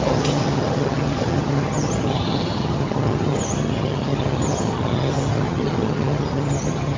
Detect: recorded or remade remade